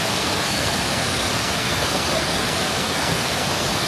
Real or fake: fake